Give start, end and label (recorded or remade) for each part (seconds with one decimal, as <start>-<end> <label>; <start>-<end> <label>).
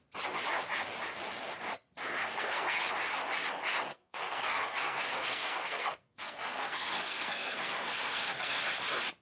0.0-2.2 recorded; 2.2-2.9 remade; 2.9-3.9 recorded; 3.9-8.6 remade; 8.6-9.2 recorded